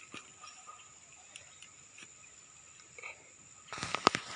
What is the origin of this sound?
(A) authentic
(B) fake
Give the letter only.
A